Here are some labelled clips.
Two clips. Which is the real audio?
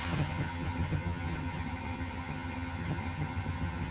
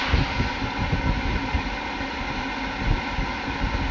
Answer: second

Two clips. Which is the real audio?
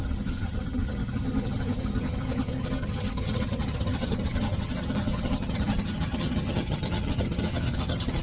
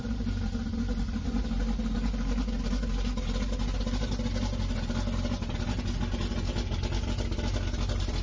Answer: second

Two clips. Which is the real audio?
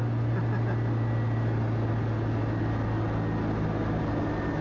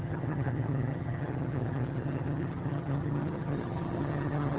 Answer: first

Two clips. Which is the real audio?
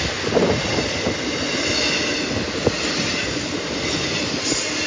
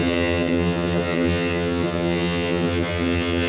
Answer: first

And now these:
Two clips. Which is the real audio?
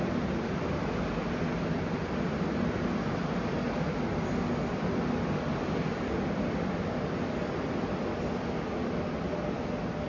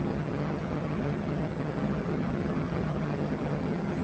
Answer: first